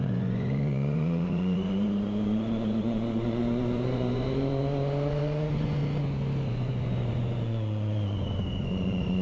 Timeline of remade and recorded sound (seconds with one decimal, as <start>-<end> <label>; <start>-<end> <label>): 0.0-5.8 remade; 5.8-6.5 recorded; 6.5-9.2 remade